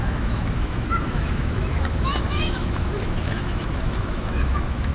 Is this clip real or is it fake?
fake